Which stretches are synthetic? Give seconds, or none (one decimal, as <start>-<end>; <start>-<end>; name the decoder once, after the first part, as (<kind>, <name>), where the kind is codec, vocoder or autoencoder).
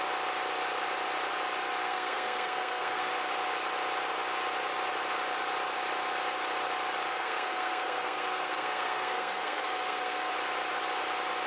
1.8-3.1 (codec, SNAC); 7.1-10.3